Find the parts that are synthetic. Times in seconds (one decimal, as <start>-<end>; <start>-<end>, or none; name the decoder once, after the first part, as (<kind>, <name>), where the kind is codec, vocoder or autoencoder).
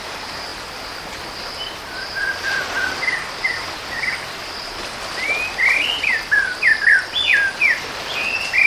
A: none